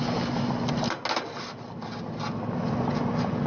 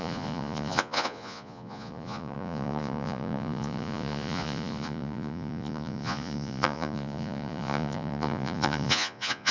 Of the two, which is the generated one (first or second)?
second